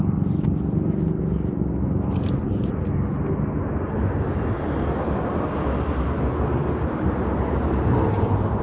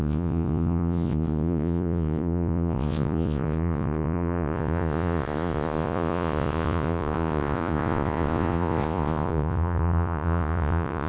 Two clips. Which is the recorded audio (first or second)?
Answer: first